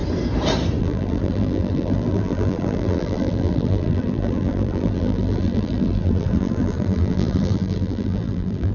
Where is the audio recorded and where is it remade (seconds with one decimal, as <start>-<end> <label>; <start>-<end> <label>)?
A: 0.0-0.8 recorded; 0.8-8.7 remade